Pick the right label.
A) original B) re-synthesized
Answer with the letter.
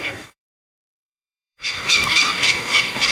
B